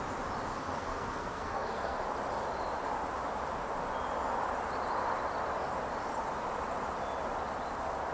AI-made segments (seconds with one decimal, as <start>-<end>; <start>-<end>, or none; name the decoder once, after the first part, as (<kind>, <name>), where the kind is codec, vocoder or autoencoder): 0.5-2.0 (codec, SNAC)